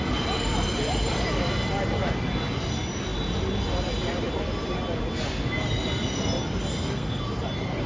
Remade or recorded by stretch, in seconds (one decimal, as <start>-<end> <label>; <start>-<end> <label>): 0.0-6.7 recorded; 6.7-7.2 remade; 7.2-7.9 recorded